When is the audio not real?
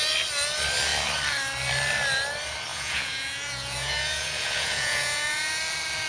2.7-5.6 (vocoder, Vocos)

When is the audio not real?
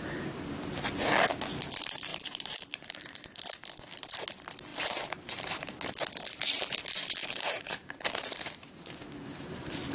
2.1-3.4 (vocoder, BigVGAN v2); 4.7-5.7; 7.2-8.4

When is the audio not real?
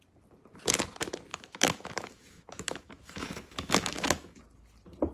1.3-4.4 (autoencoder, DAC-VAE)